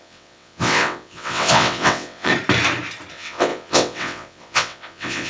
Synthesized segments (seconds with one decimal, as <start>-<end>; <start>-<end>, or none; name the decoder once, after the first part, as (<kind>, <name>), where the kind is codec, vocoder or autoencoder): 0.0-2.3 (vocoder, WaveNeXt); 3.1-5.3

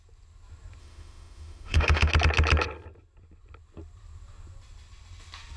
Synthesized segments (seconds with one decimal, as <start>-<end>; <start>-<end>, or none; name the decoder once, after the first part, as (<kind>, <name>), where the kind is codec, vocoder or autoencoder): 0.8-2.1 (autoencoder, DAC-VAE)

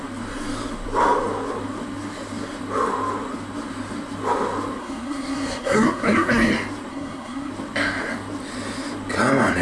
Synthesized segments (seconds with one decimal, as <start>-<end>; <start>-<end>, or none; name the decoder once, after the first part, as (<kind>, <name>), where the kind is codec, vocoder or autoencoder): 4.8-6.5 (codec, SNAC); 6.9-7.5

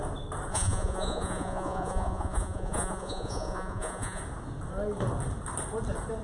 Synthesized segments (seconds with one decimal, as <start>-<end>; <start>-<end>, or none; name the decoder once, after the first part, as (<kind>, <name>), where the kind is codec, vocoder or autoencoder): 0.5-4.2 (vocoder, Vocos)